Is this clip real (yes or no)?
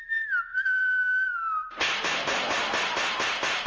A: yes